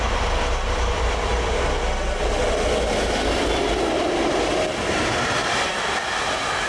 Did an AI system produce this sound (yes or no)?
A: no